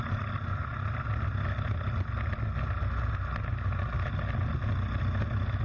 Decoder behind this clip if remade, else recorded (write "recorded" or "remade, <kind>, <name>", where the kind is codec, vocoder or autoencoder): recorded